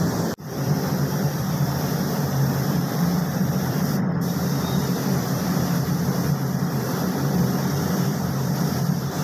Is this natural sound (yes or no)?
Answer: no